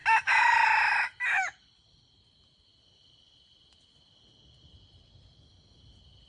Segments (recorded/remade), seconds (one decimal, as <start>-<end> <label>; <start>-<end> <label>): 0.0-6.3 recorded